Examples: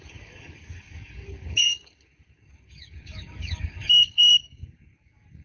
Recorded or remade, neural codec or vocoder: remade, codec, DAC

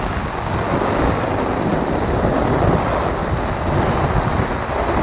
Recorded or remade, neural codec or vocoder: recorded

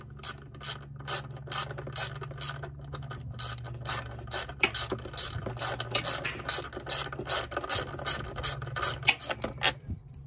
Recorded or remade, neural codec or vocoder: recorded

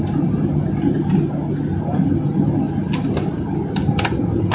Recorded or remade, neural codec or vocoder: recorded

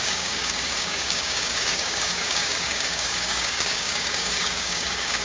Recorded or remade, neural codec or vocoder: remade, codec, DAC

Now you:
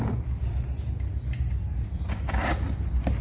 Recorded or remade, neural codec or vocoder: recorded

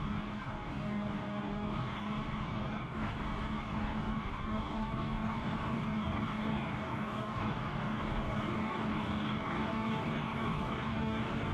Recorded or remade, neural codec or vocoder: remade, codec, DAC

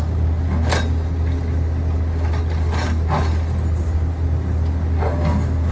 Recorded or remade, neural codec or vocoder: recorded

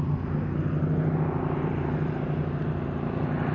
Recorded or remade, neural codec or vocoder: recorded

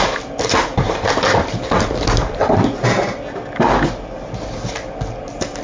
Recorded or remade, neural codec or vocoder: recorded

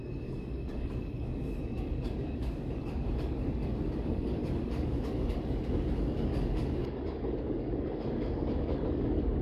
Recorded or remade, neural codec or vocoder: remade, codec, DAC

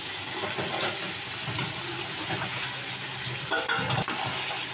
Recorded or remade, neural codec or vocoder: recorded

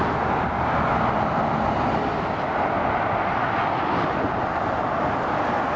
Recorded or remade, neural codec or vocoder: recorded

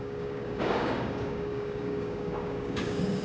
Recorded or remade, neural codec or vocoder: remade, codec, DAC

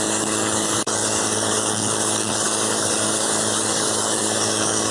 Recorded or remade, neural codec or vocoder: remade, codec, DAC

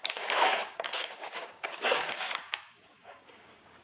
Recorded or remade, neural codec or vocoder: remade, codec, DAC